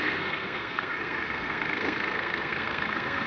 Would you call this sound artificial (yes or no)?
yes